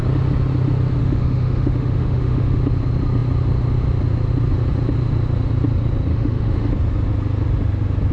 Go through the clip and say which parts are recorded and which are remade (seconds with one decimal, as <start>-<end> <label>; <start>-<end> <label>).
0.0-1.0 recorded; 1.0-2.6 remade; 2.6-6.1 recorded; 6.1-6.7 remade; 6.7-8.1 recorded